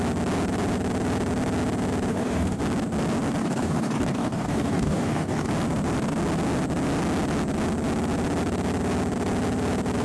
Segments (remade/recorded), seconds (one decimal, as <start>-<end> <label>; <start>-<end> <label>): 0.0-2.1 recorded; 2.1-2.6 remade; 2.6-3.4 recorded; 3.4-5.5 remade; 5.5-10.0 recorded